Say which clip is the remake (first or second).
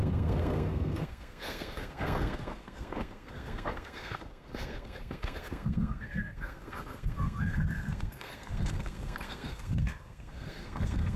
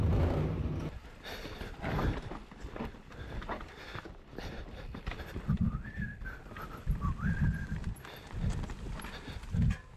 first